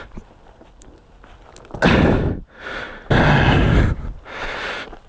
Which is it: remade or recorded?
recorded